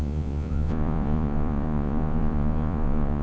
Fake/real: fake